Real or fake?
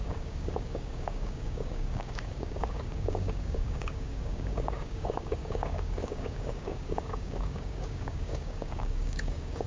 fake